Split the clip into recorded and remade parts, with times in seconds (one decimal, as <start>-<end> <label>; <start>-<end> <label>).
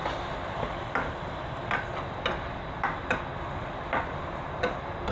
0.0-5.1 recorded